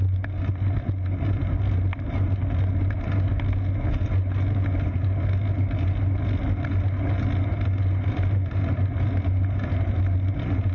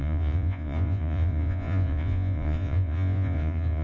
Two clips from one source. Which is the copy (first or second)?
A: second